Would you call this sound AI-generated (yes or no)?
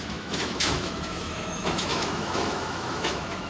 yes